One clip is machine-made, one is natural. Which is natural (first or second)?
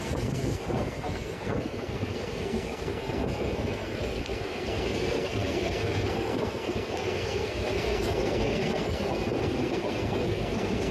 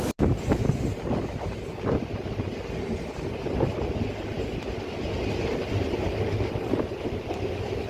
second